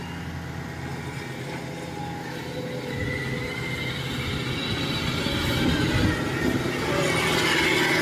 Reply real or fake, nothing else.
real